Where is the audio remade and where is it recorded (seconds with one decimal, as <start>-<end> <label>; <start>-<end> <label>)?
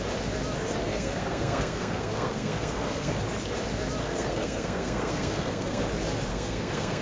0.0-0.9 recorded; 0.9-3.2 remade; 3.2-4.0 recorded; 4.0-5.8 remade; 5.8-6.3 recorded; 6.3-7.0 remade